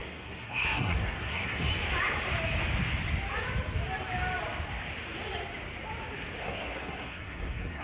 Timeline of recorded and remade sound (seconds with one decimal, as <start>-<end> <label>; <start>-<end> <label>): 0.0-1.7 remade; 1.7-6.4 recorded; 6.4-7.8 remade